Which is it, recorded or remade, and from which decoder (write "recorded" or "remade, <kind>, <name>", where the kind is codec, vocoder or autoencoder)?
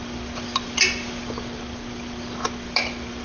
recorded